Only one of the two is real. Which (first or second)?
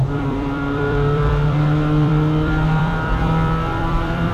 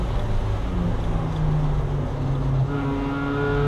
second